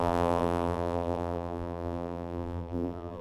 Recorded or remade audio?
remade